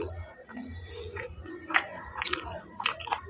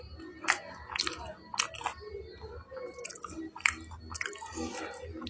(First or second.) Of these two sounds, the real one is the second